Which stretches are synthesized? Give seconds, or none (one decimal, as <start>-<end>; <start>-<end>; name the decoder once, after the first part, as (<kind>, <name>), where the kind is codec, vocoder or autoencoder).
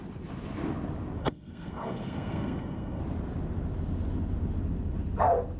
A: 1.2-3.0 (codec, SNAC)